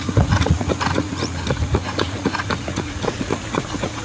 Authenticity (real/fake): fake